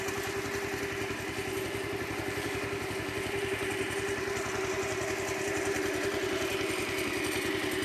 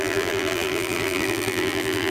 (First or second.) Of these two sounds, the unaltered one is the first